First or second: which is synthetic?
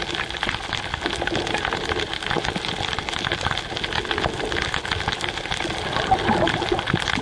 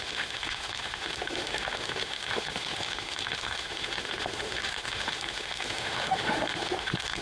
second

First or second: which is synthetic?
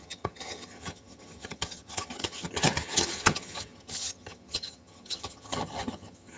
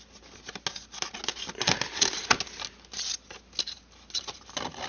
first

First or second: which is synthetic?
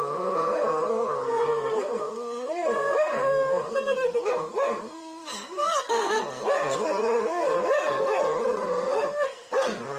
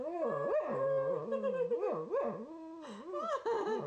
first